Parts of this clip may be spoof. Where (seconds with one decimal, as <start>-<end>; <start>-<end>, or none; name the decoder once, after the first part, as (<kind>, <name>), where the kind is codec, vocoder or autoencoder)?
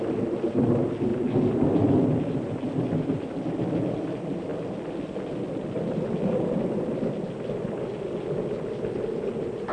none